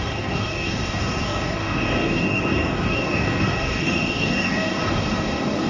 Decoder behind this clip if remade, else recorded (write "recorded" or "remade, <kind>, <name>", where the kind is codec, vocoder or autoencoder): remade, codec, DAC